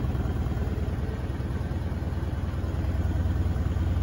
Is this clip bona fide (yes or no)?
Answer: yes